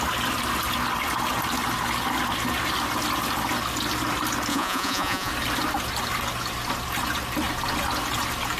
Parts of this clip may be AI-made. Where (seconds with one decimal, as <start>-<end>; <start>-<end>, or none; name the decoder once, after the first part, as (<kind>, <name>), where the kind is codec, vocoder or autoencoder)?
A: 4.5-5.3 (vocoder, Vocos)